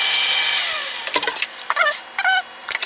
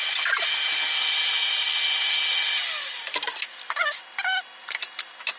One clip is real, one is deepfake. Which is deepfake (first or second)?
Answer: first